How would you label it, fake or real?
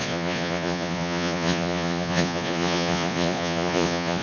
fake